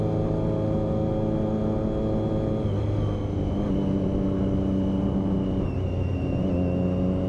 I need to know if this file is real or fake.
real